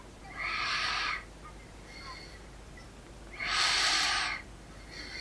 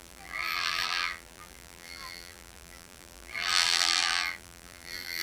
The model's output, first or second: second